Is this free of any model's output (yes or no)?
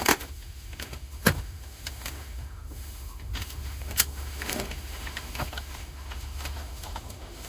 no